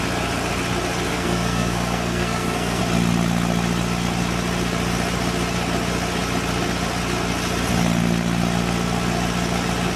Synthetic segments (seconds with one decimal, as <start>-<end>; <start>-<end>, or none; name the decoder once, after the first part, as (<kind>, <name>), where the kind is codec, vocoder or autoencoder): 1.1-2.8 (codec, SNAC)